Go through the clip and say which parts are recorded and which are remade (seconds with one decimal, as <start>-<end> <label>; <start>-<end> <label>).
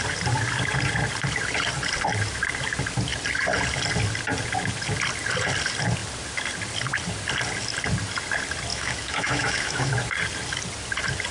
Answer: 0.0-8.7 recorded; 8.7-9.9 remade; 9.9-11.3 recorded